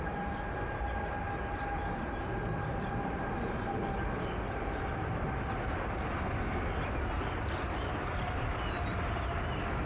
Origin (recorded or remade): recorded